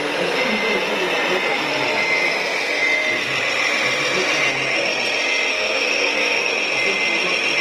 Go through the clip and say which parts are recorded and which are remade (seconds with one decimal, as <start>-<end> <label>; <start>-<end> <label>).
0.0-5.5 recorded; 5.5-6.5 remade; 6.5-7.6 recorded